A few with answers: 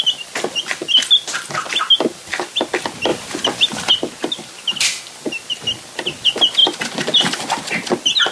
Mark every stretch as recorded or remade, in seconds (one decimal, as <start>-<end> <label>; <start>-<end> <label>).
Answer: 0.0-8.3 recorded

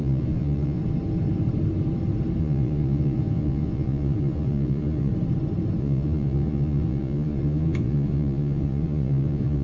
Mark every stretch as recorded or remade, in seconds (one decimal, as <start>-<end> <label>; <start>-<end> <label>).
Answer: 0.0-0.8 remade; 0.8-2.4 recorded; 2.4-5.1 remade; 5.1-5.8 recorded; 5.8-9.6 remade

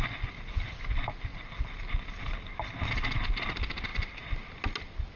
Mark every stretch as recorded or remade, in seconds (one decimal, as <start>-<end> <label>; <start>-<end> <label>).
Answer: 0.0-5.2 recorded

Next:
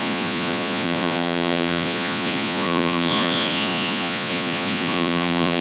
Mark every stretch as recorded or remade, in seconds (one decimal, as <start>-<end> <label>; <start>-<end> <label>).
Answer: 0.0-5.6 remade